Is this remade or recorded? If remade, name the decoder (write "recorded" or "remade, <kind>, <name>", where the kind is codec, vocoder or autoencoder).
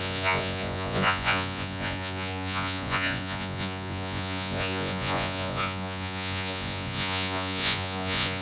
remade, vocoder, Vocos